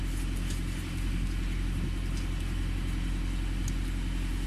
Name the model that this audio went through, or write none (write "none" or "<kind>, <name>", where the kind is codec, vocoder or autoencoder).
none